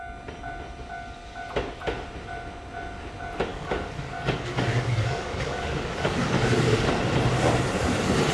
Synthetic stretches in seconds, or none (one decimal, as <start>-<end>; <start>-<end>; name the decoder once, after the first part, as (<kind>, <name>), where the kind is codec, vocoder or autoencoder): 3.5-6.9 (codec, DAC)